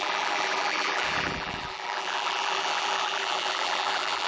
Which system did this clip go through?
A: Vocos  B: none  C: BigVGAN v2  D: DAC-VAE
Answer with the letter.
C